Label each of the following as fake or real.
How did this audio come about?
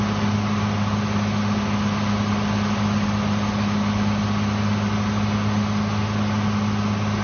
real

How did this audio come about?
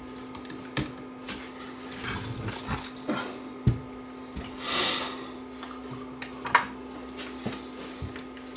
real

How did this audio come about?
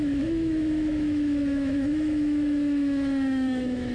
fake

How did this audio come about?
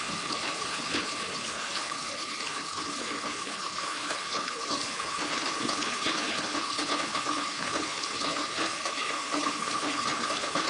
fake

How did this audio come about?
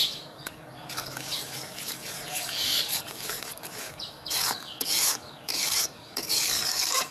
fake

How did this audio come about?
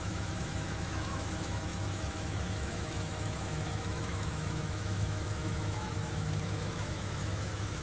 fake